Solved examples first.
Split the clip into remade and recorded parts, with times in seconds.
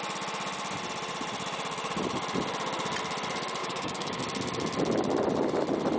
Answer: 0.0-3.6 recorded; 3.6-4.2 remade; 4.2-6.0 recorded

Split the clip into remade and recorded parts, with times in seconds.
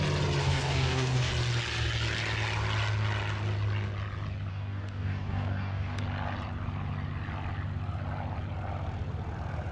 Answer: 0.0-0.4 recorded; 0.4-1.3 remade; 1.3-4.5 recorded; 4.5-6.0 remade; 6.0-9.7 recorded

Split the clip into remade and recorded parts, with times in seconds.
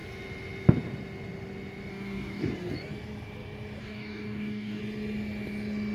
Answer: 0.0-1.9 recorded; 1.9-2.5 remade; 2.5-3.8 recorded; 3.8-4.8 remade; 4.8-5.9 recorded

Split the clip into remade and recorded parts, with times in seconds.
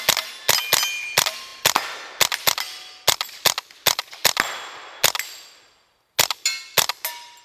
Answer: 0.0-7.4 recorded